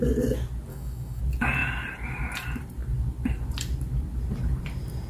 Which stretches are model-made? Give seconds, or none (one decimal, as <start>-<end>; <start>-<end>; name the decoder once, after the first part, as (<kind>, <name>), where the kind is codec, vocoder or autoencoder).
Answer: 0.7-1.2 (codec, DAC)